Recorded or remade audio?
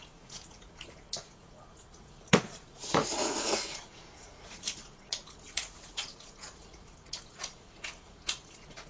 remade